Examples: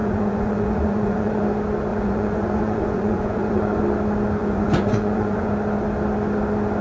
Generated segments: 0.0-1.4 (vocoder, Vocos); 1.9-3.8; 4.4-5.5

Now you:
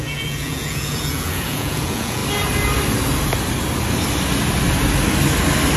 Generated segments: 0.0-2.2 (vocoder, Vocos)

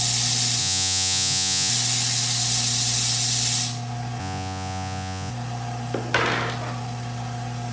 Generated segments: 0.6-1.7 (vocoder, Vocos); 4.2-5.3

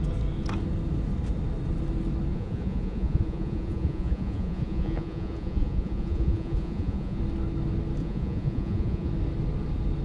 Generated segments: 2.3-7.2 (vocoder, Vocos); 8.0-9.1